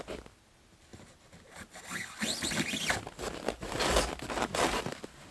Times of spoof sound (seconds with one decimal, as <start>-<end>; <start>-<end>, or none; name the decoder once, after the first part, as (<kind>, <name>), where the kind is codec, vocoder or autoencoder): none

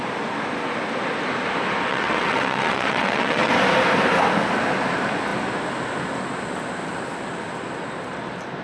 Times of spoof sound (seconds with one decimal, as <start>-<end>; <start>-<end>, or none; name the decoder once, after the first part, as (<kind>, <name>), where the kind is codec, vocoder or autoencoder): 1.9-3.5 (vocoder, WaveNeXt)

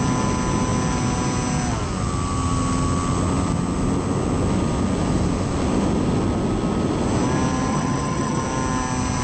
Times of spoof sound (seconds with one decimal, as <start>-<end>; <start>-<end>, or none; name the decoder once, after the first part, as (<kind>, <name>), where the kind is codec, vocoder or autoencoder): 7.7-8.4 (vocoder, HiFi-GAN)

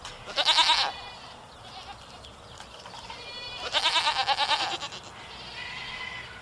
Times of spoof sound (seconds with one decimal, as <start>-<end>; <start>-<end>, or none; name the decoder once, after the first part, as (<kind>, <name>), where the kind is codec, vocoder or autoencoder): 2.3-5.1 (vocoder, BigVGAN v2)